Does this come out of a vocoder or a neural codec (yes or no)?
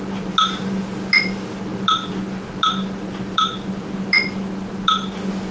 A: no